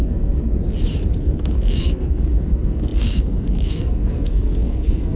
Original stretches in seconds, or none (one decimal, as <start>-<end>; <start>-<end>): 0.5-1.2